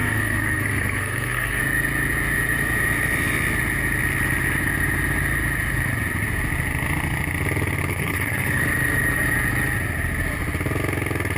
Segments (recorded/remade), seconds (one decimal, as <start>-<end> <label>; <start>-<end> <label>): 0.0-1.6 remade; 1.6-7.9 recorded; 7.9-8.6 remade; 8.6-11.4 recorded